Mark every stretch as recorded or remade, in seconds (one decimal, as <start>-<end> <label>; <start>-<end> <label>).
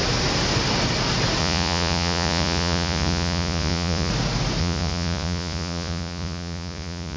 0.0-1.4 recorded; 1.4-4.1 remade; 4.1-4.6 recorded; 4.6-7.2 remade